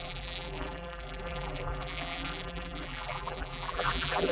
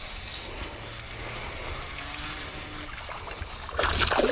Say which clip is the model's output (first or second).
first